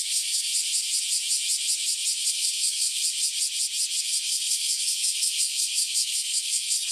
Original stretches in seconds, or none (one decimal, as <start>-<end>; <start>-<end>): 0.5-2.3; 3.0-4.0